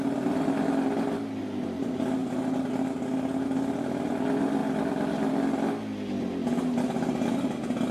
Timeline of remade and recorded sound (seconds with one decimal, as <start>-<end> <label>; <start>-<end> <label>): 0.0-7.9 recorded